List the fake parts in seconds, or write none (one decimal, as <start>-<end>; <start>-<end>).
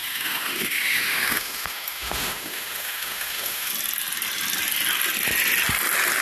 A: 0.0-3.7